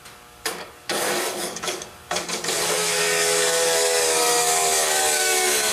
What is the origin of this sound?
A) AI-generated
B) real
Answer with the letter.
A